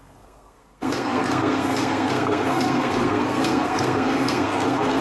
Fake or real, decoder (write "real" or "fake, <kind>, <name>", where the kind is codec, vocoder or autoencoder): fake, codec, SNAC